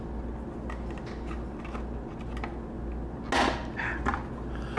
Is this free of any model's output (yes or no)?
yes